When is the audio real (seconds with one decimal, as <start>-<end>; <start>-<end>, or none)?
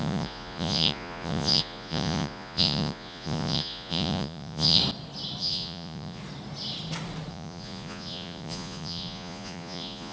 4.8-5.4; 6.2-7.3